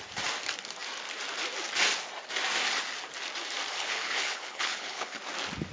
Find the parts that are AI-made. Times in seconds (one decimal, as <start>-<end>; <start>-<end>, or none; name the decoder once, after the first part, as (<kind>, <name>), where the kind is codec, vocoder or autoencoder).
3.7-5.2 (codec, HILCodec)